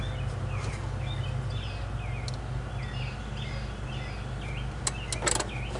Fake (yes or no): no